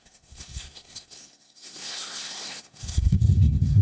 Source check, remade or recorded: remade